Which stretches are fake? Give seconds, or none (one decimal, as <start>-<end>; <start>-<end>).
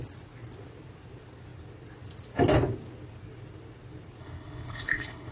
4.2-5.3